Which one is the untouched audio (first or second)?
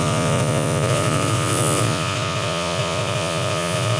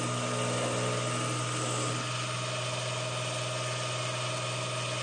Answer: second